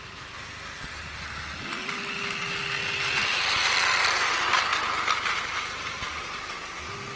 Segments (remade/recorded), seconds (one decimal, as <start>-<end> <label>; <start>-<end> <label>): 0.0-7.2 recorded